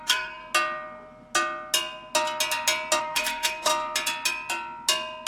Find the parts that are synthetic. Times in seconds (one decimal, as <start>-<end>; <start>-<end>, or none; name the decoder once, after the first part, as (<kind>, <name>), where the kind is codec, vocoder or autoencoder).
0.0-0.4 (codec, SNAC); 3.0-3.7